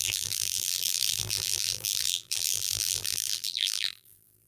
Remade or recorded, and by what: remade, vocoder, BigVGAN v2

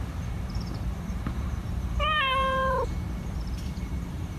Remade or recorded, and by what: remade, vocoder, BigVGAN v2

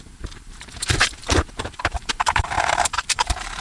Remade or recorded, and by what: remade, vocoder, BigVGAN v2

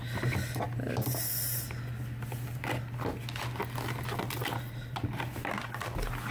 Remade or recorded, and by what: recorded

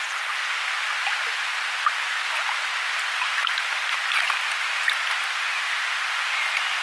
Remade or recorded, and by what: recorded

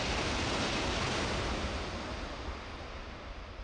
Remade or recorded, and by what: recorded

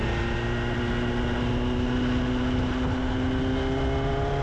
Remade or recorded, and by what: recorded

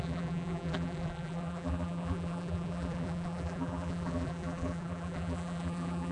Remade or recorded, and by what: remade, vocoder, BigVGAN v2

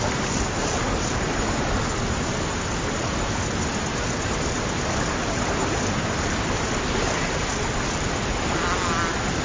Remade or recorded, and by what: recorded